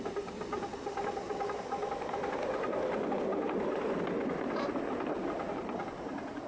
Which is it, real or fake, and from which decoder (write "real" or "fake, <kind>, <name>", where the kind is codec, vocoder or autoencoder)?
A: real